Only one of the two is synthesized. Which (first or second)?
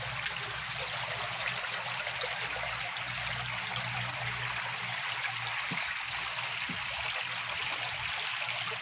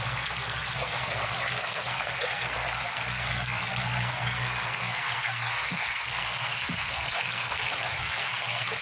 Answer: second